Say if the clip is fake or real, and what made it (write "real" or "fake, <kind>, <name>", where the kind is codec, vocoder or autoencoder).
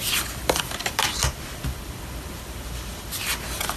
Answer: fake, vocoder, BigVGAN v2